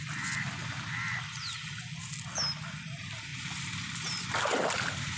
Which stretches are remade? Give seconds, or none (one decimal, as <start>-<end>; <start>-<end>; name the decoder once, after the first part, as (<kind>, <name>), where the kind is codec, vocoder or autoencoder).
none